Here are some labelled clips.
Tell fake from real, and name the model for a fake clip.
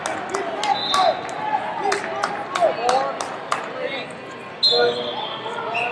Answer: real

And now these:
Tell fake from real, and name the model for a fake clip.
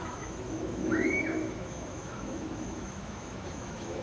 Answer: fake, autoencoder, DAC-VAE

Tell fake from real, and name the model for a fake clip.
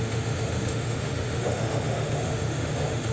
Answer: fake, autoencoder, DAC-VAE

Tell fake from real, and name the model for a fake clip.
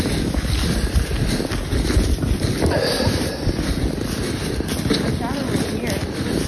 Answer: real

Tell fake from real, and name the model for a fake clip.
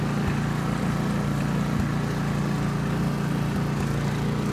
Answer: real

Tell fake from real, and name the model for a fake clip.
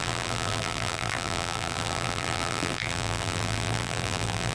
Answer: fake, vocoder, BigVGAN v2